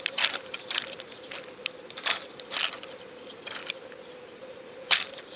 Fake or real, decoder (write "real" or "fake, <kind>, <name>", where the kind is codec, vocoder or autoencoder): real